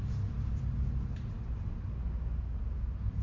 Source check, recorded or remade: recorded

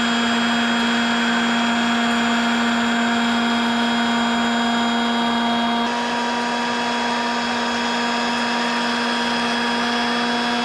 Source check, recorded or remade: recorded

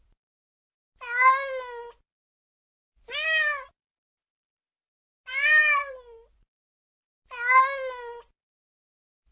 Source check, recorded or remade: recorded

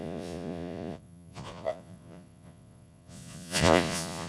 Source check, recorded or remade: remade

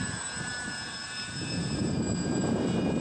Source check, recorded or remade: remade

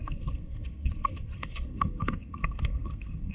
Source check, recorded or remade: remade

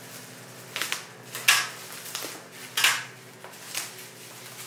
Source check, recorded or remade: recorded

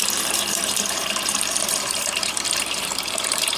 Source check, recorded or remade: remade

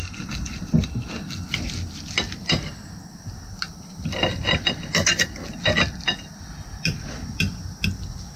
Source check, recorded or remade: recorded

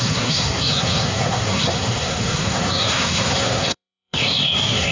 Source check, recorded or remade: remade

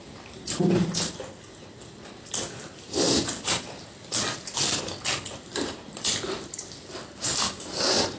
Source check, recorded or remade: recorded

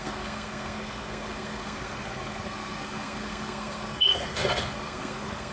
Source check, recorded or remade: remade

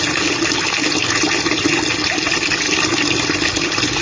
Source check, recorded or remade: recorded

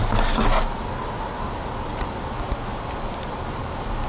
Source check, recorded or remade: recorded